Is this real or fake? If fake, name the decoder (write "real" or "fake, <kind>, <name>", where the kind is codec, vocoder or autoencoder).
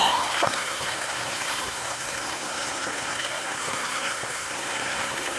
fake, codec, SNAC